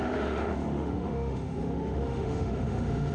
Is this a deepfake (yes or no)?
yes